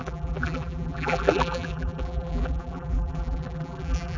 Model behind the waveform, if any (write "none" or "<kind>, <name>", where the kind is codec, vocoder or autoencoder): vocoder, BigVGAN v2